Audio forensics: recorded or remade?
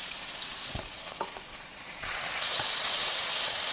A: remade